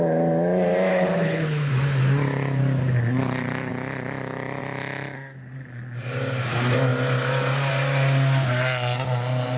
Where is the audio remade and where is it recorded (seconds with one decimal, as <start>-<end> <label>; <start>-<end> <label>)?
0.0-0.9 recorded; 0.9-1.7 remade; 1.7-9.6 recorded